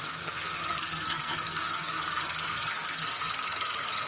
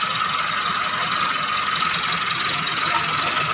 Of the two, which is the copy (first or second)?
first